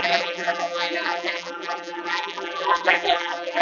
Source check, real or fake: fake